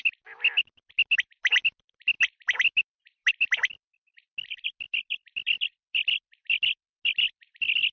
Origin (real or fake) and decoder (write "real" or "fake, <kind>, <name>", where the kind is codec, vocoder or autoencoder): real